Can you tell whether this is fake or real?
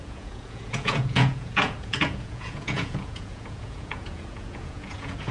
fake